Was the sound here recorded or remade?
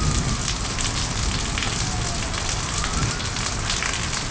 recorded